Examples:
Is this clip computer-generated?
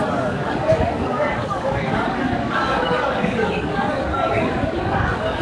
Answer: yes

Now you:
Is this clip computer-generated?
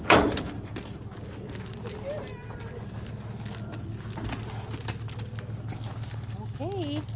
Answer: no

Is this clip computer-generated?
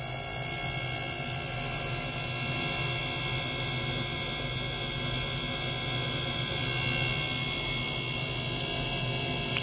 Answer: no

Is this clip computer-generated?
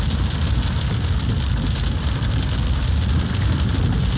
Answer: no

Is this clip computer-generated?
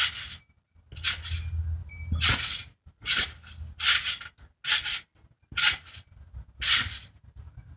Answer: no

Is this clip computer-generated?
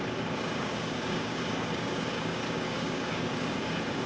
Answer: yes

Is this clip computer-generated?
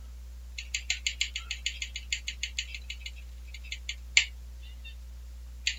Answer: no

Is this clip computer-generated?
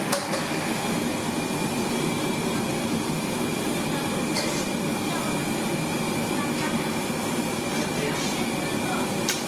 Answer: no